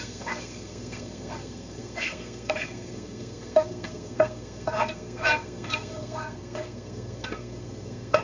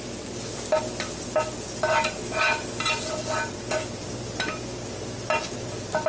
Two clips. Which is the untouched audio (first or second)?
second